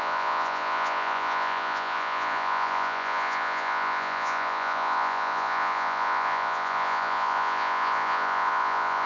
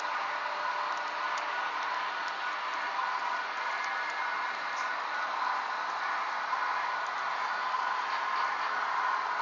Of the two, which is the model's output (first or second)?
first